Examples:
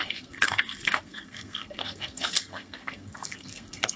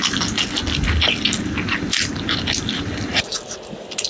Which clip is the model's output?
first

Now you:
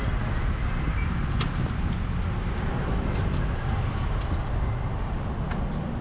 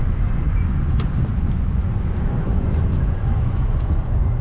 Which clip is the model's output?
second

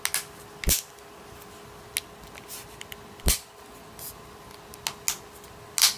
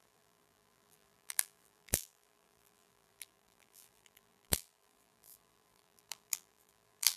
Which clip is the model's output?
second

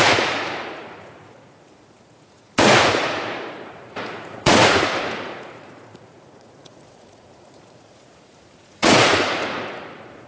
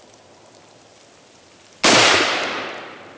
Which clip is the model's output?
first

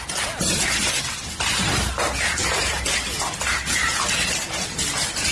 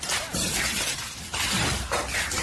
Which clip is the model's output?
second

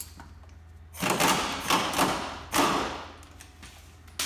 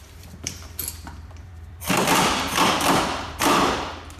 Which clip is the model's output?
second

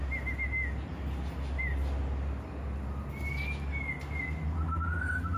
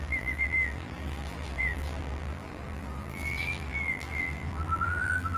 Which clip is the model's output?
second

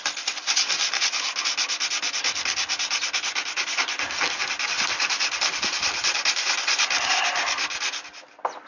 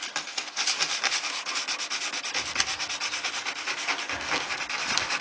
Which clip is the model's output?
first